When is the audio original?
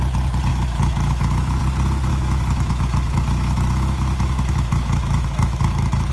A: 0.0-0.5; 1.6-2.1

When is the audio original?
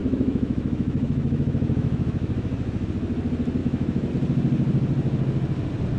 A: 2.9-3.6; 4.1-6.0